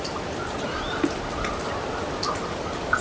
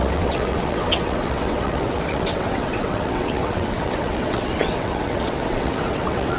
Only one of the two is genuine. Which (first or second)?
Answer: first